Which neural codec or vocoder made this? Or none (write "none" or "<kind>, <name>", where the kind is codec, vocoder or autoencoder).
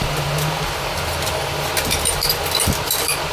none